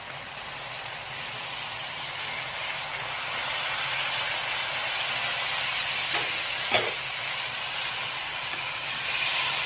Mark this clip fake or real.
real